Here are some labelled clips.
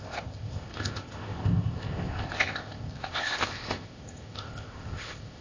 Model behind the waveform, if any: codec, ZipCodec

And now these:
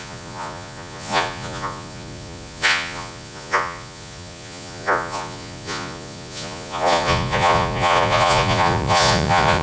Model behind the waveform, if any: vocoder, Vocos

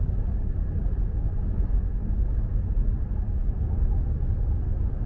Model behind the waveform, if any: none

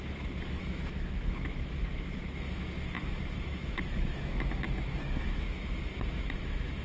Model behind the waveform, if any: autoencoder, DAC-VAE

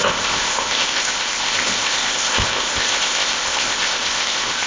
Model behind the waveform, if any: codec, ZipCodec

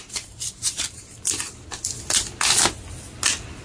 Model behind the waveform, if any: none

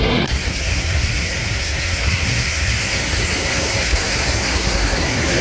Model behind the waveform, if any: codec, SNAC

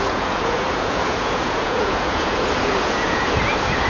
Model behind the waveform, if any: vocoder, Vocos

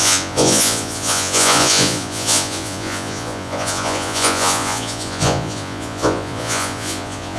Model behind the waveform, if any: vocoder, Vocos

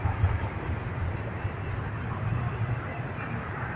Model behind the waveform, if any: vocoder, BigVGAN v2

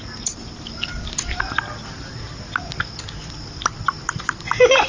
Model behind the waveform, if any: none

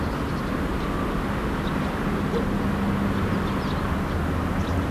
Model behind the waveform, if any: none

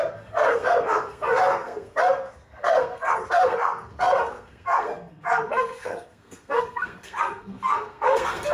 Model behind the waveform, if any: codec, SNAC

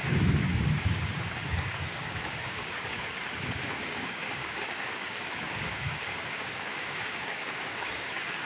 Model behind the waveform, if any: codec, DAC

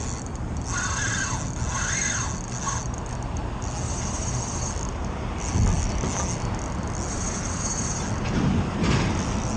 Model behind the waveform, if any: none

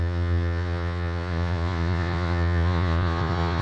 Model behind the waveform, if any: vocoder, Vocos